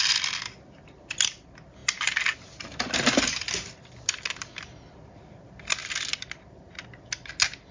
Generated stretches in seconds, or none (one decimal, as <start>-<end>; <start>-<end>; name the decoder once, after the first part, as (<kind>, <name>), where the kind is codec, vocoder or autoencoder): none